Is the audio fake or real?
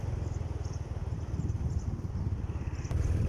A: fake